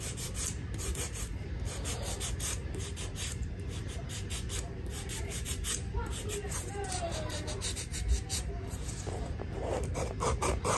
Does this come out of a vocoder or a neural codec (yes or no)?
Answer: yes